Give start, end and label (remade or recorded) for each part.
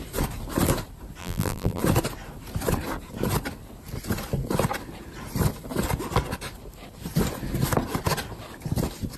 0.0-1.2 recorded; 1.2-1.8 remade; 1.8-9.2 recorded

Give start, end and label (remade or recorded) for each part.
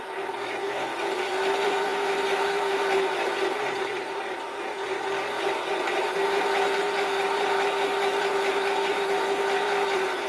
0.0-10.3 remade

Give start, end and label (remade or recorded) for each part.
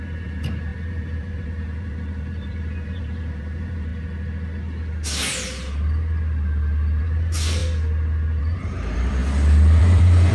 0.0-3.9 remade; 3.9-7.0 recorded; 7.0-7.6 remade; 7.6-8.4 recorded; 8.4-9.2 remade; 9.2-9.8 recorded; 9.8-10.3 remade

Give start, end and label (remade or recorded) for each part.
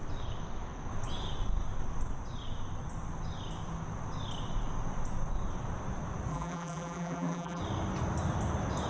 0.0-6.3 recorded; 6.3-7.6 remade; 7.6-8.9 recorded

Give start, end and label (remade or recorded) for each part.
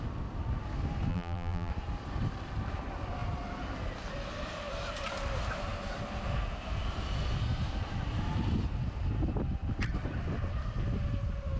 0.0-1.1 recorded; 1.1-1.7 remade; 1.7-11.6 recorded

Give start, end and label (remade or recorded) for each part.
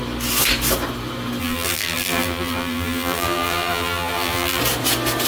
0.0-1.4 recorded; 1.4-4.6 remade; 4.6-5.3 recorded